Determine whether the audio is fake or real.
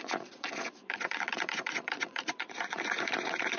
fake